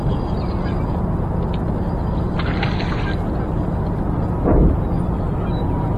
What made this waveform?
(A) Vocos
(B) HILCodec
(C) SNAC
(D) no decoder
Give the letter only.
D